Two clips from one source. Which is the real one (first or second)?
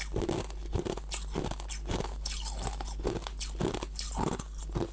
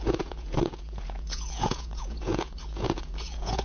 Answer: first